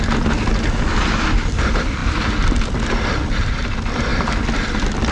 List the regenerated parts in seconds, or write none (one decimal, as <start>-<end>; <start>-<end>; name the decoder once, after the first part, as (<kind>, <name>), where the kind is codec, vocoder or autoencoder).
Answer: none